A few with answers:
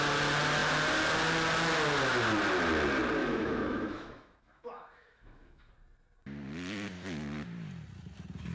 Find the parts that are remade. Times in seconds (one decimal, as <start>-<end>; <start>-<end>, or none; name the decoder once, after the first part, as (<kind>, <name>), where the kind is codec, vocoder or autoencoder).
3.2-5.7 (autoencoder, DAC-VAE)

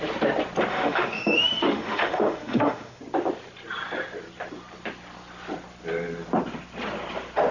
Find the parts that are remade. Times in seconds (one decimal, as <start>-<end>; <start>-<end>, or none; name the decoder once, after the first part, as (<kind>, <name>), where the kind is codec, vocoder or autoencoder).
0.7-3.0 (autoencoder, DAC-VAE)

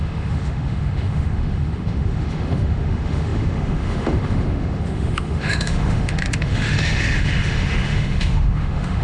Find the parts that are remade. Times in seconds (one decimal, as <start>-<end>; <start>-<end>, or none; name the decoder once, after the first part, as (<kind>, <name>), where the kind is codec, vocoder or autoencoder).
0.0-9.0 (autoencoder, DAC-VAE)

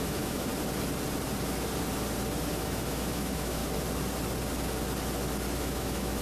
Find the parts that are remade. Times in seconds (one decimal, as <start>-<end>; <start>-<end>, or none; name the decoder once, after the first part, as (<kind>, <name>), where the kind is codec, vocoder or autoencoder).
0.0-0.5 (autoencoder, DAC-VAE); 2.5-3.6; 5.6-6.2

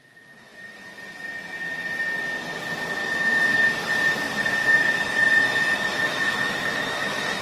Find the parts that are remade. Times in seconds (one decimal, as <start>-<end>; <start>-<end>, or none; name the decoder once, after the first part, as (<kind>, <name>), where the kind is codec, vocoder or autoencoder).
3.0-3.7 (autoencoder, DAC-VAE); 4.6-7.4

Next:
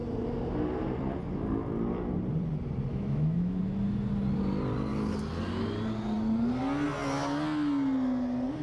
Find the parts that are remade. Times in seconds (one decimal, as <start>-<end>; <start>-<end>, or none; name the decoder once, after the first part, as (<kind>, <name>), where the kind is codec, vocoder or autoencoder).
2.9-3.6 (autoencoder, DAC-VAE)